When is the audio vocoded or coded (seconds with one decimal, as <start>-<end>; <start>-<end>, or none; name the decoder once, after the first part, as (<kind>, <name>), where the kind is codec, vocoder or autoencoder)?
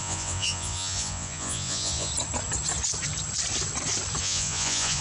0.0-2.1 (vocoder, Vocos); 4.2-5.0